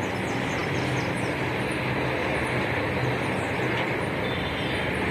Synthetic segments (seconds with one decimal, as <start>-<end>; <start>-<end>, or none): none